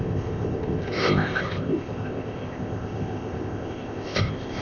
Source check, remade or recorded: remade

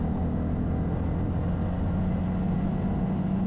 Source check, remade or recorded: recorded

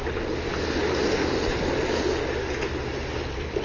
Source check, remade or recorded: recorded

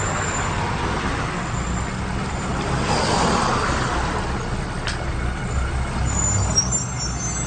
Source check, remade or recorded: recorded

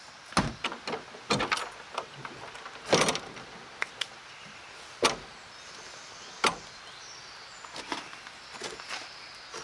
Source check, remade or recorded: recorded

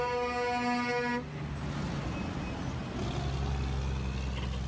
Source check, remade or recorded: recorded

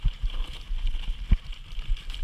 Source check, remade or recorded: recorded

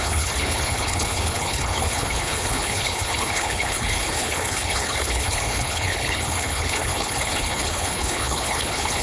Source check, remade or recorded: remade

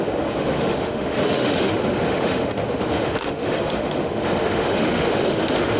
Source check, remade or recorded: remade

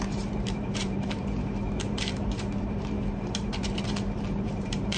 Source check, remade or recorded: remade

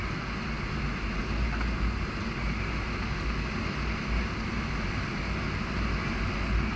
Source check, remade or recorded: recorded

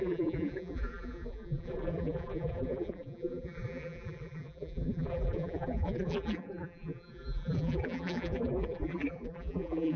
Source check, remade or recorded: remade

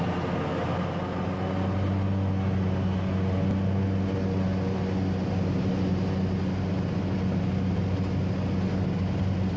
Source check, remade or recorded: recorded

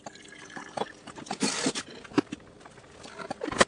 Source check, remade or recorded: remade